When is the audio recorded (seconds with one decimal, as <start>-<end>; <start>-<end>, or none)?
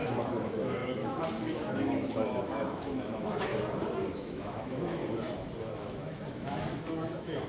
3.5-4.1; 5.0-5.7